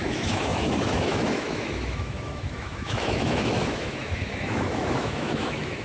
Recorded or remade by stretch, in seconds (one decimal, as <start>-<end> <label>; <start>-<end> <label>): 0.0-5.8 remade